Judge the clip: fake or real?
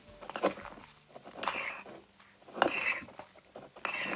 real